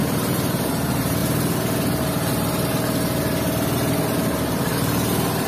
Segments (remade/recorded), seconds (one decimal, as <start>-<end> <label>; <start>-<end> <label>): 0.0-1.2 remade; 1.2-4.5 recorded; 4.5-5.5 remade